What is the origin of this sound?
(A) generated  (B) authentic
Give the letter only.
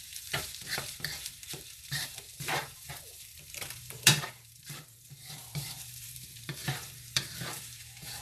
A